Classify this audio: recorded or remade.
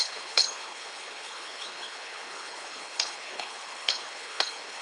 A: remade